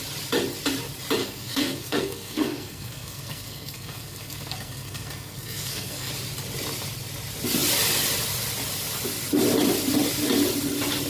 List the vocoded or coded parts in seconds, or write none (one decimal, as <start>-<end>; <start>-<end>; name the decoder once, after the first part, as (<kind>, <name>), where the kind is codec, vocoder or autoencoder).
1.2-6.1 (codec, SNAC)